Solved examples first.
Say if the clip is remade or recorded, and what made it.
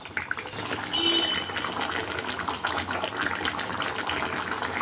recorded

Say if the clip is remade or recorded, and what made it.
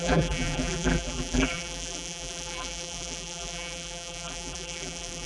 remade, vocoder, BigVGAN v2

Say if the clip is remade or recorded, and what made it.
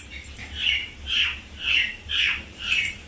remade, vocoder, BigVGAN v2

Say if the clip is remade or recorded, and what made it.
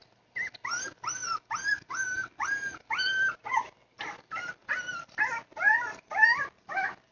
recorded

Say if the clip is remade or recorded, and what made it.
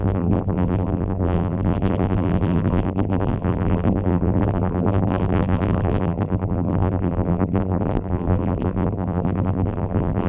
remade, vocoder, BigVGAN v2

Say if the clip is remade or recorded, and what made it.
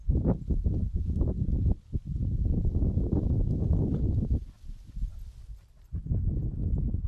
recorded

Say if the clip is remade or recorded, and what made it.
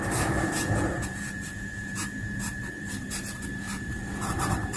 remade, vocoder, BigVGAN v2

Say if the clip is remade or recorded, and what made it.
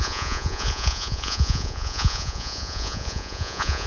remade, vocoder, Vocos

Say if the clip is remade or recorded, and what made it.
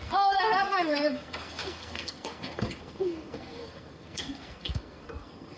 remade, codec, SNAC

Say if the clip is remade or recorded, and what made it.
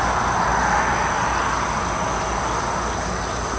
recorded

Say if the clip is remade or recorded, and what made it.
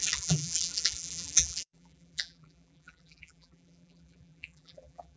remade, vocoder, BigVGAN v2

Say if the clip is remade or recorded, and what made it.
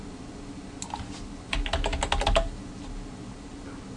recorded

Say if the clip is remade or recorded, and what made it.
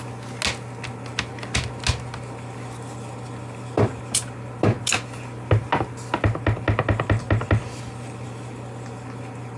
recorded